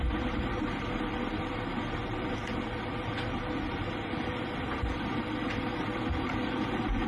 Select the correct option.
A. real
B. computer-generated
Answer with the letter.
A